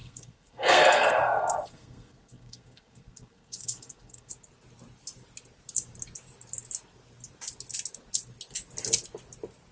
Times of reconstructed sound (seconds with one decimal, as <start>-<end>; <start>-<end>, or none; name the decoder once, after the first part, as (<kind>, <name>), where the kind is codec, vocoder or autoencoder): 0.0-4.3 (codec, SNAC)